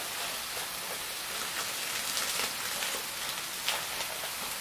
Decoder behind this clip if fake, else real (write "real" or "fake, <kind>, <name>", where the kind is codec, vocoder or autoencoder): real